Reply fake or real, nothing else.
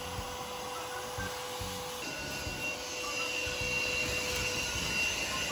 real